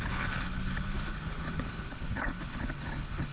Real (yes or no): no